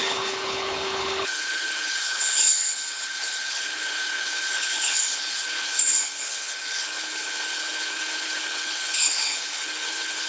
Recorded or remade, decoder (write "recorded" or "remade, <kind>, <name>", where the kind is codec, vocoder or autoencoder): remade, codec, HILCodec